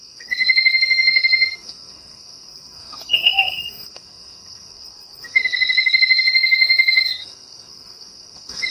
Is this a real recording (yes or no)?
no